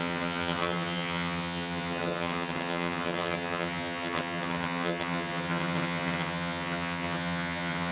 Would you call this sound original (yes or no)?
no